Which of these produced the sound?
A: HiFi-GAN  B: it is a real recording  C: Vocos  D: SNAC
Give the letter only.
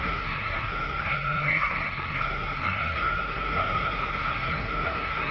D